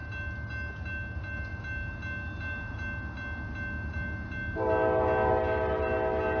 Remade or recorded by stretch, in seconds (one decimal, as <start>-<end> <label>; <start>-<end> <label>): 0.0-6.4 recorded